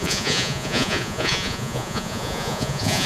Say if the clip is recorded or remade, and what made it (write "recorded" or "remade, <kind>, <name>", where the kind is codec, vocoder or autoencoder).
remade, vocoder, Vocos